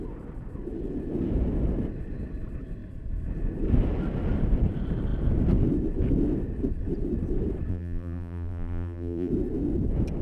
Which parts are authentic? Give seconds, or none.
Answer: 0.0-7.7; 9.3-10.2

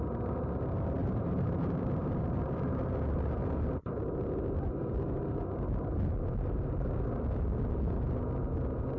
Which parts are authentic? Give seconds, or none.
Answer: 0.0-1.0; 3.4-9.0

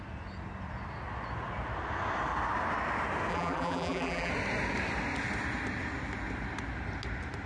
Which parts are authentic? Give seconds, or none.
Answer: 0.0-3.3; 4.3-7.5